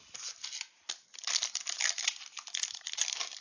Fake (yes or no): no